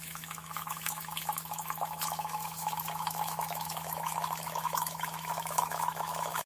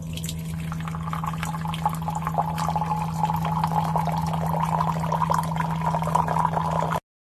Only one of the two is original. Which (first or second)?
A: second